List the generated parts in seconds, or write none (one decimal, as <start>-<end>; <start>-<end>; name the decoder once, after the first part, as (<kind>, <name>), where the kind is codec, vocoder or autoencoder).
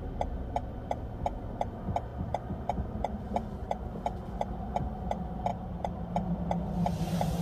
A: 5.5-6.1 (vocoder, BigVGAN v2)